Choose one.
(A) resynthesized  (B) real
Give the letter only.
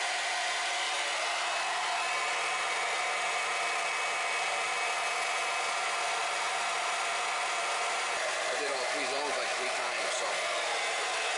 B